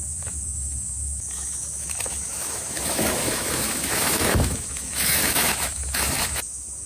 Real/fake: fake